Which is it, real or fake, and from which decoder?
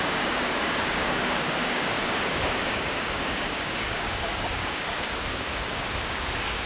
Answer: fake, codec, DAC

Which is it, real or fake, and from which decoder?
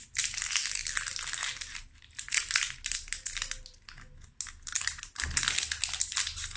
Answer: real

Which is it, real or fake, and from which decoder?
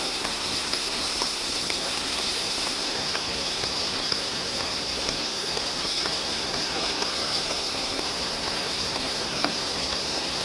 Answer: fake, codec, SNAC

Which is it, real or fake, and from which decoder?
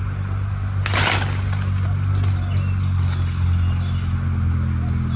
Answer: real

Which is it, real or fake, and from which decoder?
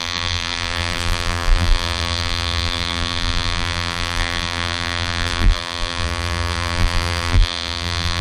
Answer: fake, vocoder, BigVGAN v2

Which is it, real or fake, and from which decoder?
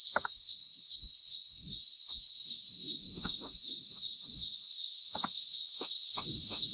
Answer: fake, autoencoder, DAC-VAE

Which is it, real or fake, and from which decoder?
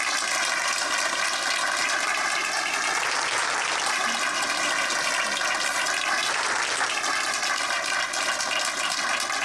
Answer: real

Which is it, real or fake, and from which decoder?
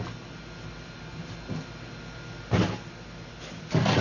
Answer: real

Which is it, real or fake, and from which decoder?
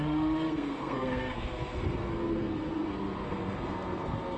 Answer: fake, codec, SNAC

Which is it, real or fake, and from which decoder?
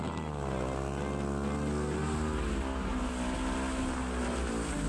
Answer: real